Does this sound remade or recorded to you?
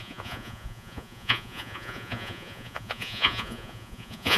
remade